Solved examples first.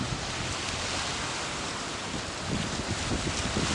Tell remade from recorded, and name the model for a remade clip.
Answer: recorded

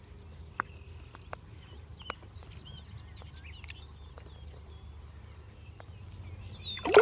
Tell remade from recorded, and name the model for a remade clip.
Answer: recorded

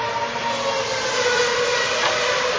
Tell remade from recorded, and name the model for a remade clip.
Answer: recorded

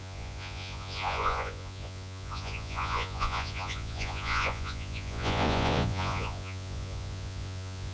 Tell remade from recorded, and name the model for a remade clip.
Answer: remade, vocoder, Vocos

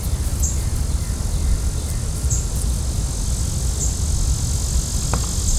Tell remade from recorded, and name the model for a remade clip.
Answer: recorded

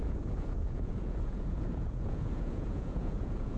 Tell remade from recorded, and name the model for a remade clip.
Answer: remade, vocoder, Vocos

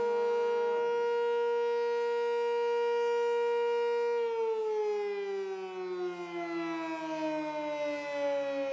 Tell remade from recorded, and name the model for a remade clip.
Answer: recorded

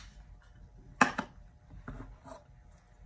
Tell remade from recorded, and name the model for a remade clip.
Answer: recorded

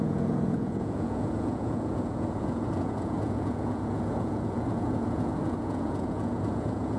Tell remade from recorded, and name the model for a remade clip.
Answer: remade, vocoder, Vocos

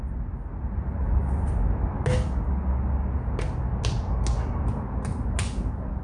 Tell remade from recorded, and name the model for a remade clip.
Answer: recorded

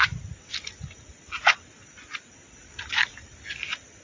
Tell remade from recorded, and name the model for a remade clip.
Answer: recorded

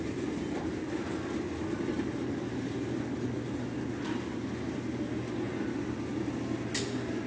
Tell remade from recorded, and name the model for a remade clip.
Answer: recorded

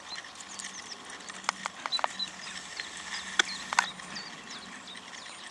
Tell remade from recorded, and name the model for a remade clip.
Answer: recorded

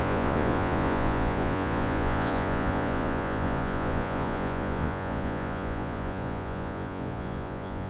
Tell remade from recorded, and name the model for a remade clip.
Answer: remade, vocoder, Vocos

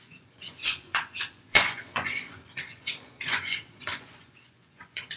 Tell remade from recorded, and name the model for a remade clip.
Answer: remade, vocoder, Vocos